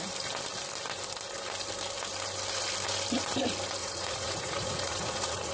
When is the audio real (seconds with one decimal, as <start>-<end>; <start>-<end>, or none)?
0.0-3.8